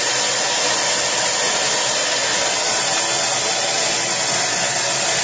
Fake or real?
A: real